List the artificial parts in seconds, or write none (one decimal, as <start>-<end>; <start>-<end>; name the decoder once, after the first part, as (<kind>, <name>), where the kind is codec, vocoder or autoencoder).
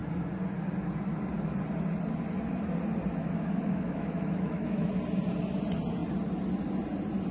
3.2-4.9 (autoencoder, DAC-VAE)